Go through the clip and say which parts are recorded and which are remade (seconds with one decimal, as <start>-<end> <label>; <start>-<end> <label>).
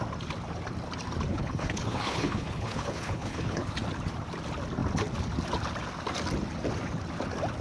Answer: 0.0-1.3 recorded; 1.3-3.7 remade; 3.7-7.6 recorded